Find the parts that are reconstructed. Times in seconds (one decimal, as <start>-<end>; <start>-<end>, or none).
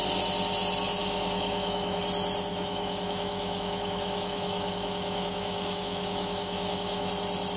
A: 1.0-2.0; 2.5-7.1